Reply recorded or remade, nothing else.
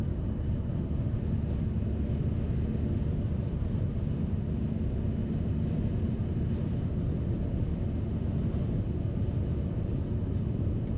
recorded